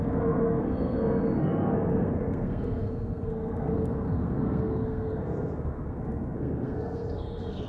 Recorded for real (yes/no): no